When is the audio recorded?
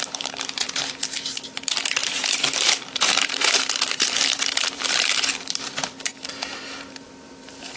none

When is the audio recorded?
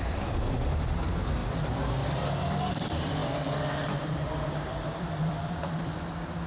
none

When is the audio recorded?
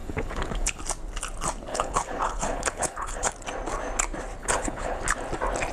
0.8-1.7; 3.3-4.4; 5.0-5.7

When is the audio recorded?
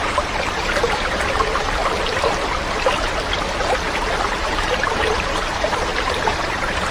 1.8-4.2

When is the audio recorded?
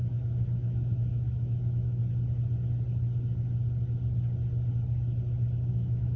2.0-5.7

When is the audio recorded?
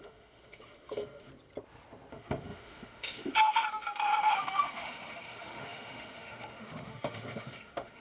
1.3-2.1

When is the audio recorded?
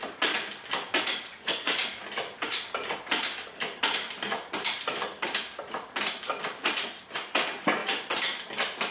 0.0-1.3; 1.8-8.9